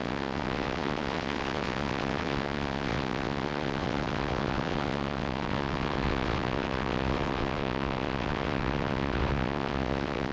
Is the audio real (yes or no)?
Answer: no